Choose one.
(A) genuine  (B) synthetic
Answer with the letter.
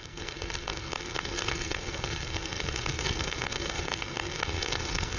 B